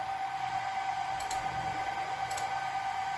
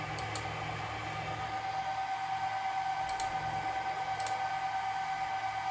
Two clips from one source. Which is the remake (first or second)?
first